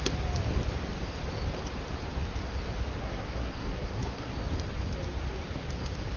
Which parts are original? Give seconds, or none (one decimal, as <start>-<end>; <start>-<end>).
0.0-3.0; 4.3-6.2